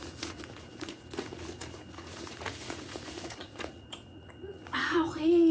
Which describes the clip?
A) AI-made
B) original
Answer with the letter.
A